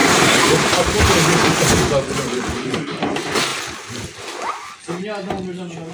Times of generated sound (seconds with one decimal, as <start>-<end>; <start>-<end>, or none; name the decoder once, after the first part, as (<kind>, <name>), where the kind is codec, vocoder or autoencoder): 0.0-1.7 (vocoder, BigVGAN v2)